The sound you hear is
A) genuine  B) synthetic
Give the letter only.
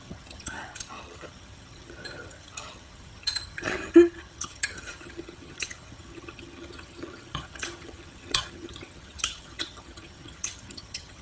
B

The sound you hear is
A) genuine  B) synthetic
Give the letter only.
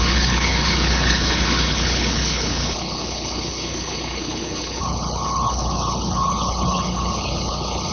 B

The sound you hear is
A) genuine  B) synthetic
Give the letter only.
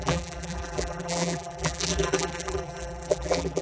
B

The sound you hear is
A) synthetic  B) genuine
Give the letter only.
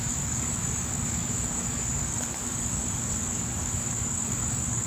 A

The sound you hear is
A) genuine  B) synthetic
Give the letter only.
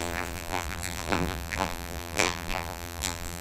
B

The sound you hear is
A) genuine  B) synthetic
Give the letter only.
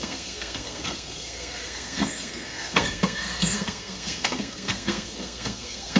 B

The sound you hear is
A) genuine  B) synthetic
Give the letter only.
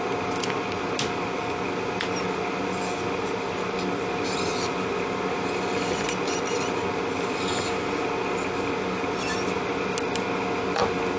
A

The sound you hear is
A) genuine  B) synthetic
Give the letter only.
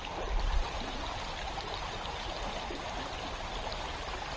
B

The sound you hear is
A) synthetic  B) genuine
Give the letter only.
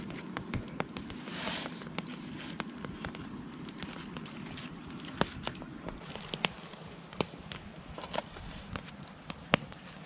B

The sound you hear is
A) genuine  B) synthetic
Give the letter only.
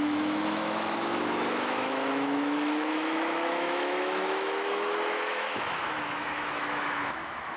B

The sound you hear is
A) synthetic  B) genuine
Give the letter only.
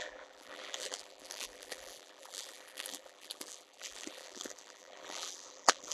A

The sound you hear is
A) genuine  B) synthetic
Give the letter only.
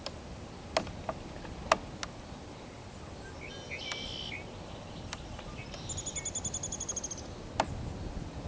A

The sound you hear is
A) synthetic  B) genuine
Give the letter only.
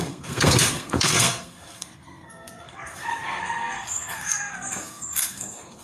A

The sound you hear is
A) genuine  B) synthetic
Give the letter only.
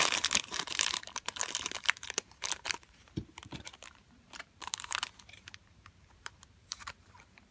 B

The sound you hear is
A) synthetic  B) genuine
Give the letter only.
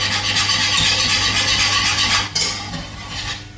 B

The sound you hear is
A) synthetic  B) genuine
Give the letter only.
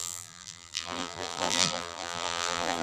A